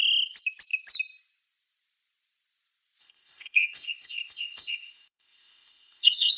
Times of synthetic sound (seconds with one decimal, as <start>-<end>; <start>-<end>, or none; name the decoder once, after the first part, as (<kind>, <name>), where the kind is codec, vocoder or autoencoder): 3.0-6.4 (codec, ZipCodec)